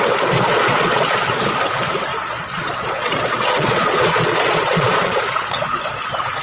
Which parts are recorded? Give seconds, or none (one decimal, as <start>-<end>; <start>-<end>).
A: 0.0-0.5; 1.4-2.1; 5.9-6.4